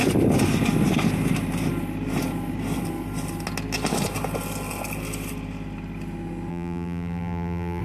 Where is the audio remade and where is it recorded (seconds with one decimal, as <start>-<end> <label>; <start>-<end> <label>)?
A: 0.0-6.5 recorded; 6.5-7.8 remade